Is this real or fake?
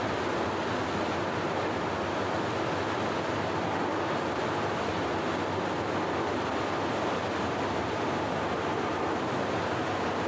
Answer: real